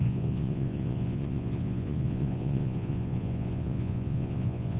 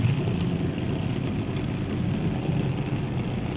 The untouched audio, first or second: second